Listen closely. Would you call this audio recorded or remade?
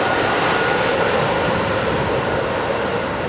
recorded